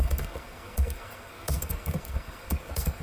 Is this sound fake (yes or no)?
yes